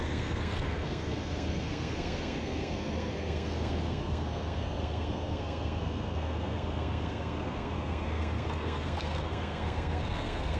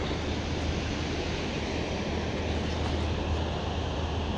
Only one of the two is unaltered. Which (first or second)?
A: second